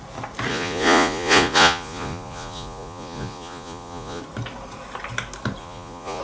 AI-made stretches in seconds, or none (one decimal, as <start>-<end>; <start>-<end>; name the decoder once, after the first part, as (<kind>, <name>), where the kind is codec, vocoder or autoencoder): 0.5-4.2 (vocoder, Vocos); 5.6-6.2